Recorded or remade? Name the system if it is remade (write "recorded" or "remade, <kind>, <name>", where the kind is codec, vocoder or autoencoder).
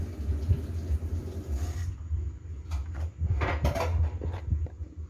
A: recorded